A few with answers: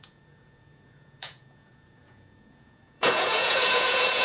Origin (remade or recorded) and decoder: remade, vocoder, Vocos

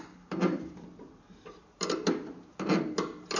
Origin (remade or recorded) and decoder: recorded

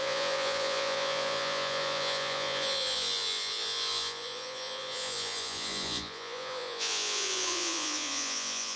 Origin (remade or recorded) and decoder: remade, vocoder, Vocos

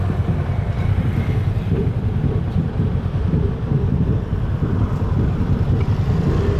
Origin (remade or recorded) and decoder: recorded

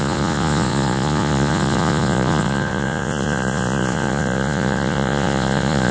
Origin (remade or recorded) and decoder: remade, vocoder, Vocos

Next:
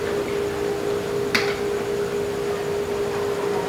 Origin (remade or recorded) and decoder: recorded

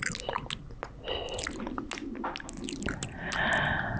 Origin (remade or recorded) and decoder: recorded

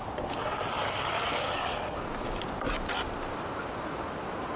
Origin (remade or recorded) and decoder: recorded